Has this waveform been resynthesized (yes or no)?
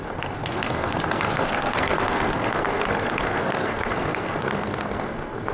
yes